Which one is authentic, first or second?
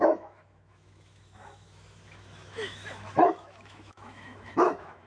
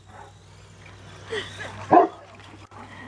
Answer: second